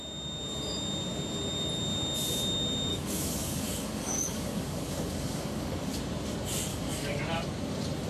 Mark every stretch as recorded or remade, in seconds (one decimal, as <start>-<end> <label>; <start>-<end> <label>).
0.0-2.9 recorded; 2.9-6.0 remade; 6.0-6.7 recorded; 6.7-7.2 remade; 7.2-8.1 recorded